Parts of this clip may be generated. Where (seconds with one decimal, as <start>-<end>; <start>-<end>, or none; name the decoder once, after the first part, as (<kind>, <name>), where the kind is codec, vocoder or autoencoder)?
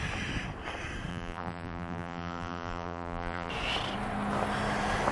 1.1-3.5 (vocoder, BigVGAN v2)